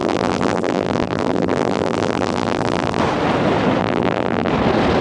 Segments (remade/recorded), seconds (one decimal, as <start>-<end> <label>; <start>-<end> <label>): 0.0-3.0 remade; 3.0-3.8 recorded; 3.8-4.5 remade; 4.5-5.0 recorded

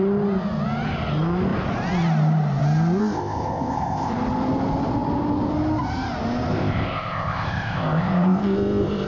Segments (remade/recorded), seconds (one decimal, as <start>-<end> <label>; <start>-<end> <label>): 0.0-3.0 recorded; 3.0-4.1 remade; 4.1-6.5 recorded; 6.5-9.1 remade

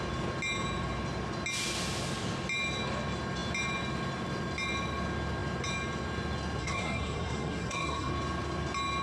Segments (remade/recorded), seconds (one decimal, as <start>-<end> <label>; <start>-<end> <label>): 0.0-6.6 recorded; 6.6-8.1 remade; 8.1-9.0 recorded

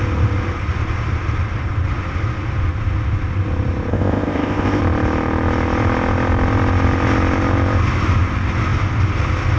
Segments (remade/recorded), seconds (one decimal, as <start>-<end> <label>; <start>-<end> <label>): 0.0-3.9 recorded; 3.9-4.8 remade; 4.8-9.6 recorded

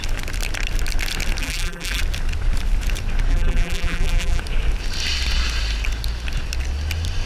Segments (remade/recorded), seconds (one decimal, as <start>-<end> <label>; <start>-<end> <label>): 0.0-1.4 recorded; 1.4-2.0 remade; 2.0-3.3 recorded; 3.3-4.4 remade; 4.4-7.3 recorded

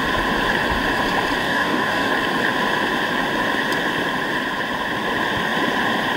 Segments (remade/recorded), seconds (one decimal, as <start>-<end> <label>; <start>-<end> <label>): 0.0-1.4 recorded; 1.4-2.1 remade; 2.1-6.2 recorded

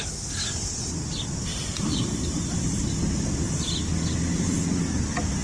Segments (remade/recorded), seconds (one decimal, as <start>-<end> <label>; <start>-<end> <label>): 0.0-1.5 recorded; 1.5-3.2 remade; 3.2-5.4 recorded

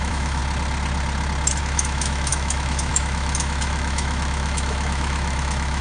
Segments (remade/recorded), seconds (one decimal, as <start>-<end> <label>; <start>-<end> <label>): 0.0-0.4 remade; 0.4-1.6 recorded; 1.6-5.8 remade